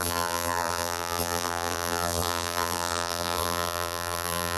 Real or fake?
fake